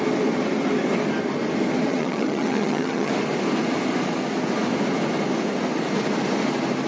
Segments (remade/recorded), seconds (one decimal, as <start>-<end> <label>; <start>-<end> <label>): 0.0-1.9 recorded; 1.9-3.1 remade; 3.1-6.9 recorded